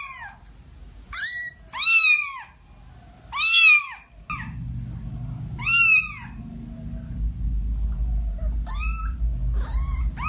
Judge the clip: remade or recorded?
recorded